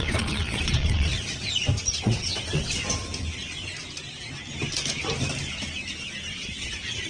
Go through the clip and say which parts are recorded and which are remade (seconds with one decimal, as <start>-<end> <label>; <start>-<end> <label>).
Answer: 0.0-1.1 remade; 1.1-2.0 recorded; 2.0-2.8 remade; 2.8-6.3 recorded; 6.3-7.1 remade